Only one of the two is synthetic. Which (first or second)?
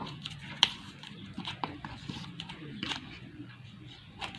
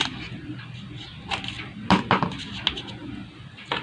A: first